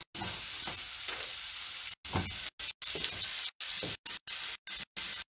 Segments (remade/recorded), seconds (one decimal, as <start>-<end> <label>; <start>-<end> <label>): 0.0-5.3 recorded